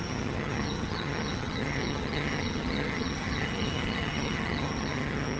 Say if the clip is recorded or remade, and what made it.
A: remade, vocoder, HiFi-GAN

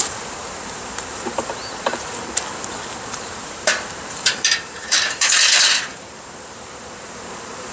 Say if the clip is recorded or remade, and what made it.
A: remade, vocoder, BigVGAN v2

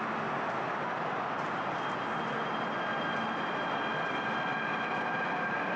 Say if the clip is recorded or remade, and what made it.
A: recorded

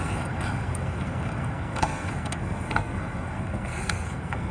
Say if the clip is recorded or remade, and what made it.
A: remade, codec, SNAC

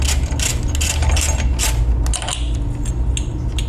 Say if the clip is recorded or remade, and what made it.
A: recorded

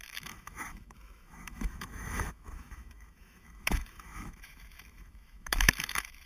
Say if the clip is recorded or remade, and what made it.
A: remade, autoencoder, DAC-VAE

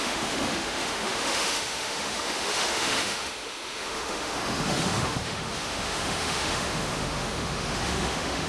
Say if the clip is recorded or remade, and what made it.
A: remade, autoencoder, DAC-VAE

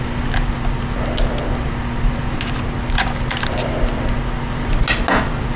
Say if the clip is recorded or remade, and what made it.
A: recorded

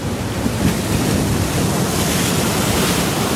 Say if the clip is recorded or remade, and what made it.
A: recorded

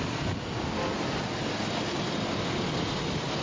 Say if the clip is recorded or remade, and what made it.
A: recorded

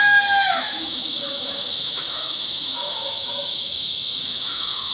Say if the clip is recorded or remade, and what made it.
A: remade, autoencoder, DAC-VAE